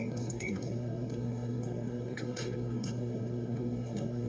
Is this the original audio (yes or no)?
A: no